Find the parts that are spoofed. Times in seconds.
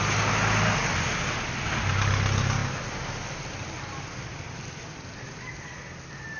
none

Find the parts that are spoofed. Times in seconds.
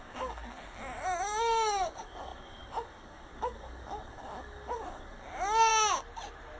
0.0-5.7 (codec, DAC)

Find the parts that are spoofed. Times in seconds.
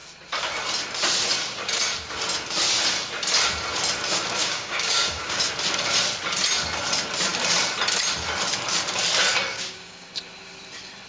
4.4-5.5 (codec, DAC); 9.5-10.1